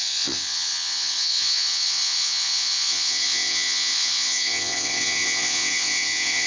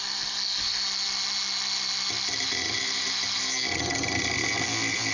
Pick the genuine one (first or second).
second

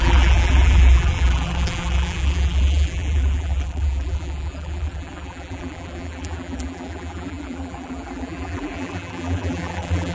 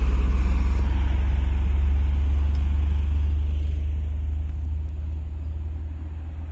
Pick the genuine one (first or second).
second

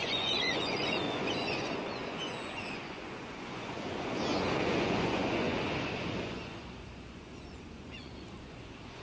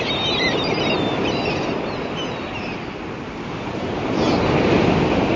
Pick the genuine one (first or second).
second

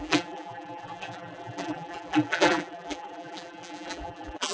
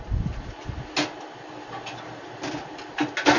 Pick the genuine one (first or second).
second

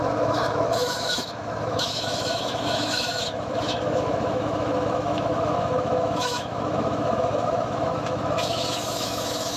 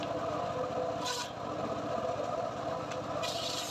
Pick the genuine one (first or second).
second